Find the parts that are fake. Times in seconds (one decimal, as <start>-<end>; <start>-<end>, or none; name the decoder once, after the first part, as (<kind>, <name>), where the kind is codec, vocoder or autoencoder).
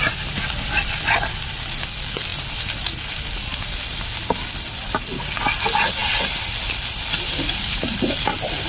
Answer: none